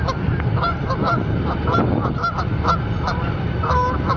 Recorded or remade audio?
recorded